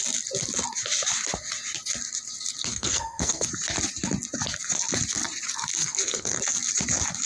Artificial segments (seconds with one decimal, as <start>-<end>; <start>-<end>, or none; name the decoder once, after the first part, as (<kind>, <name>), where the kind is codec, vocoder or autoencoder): 2.7-3.5 (codec, SNAC); 5.8-6.4